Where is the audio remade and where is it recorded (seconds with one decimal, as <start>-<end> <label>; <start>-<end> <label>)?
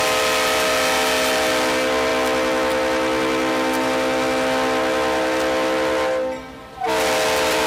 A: 0.0-7.7 recorded